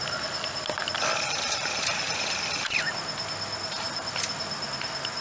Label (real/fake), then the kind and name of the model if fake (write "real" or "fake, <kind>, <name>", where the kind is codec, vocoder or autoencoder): real